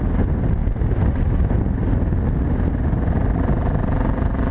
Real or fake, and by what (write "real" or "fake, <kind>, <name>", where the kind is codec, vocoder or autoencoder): real